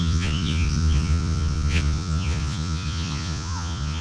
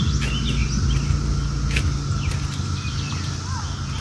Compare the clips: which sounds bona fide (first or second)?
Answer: second